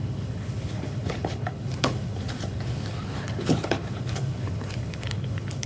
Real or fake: fake